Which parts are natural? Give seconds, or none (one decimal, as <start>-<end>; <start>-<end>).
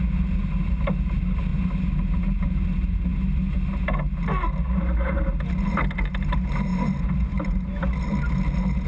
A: 0.0-8.9